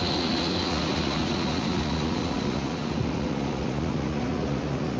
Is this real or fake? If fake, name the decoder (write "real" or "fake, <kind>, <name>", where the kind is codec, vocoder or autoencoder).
fake, vocoder, Vocos